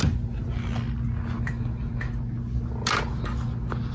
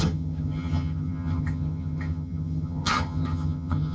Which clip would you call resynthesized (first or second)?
second